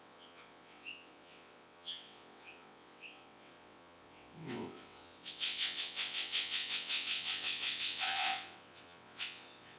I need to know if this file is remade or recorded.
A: remade